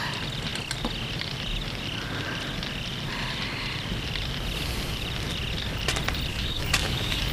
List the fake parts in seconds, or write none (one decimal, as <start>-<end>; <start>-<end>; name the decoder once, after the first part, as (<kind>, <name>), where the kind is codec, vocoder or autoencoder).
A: 6.3-7.3 (codec, DAC)